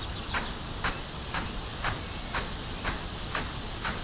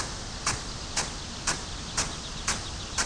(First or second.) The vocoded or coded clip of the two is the first